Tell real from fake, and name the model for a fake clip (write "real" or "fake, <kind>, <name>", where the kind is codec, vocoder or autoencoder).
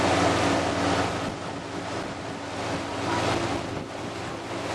real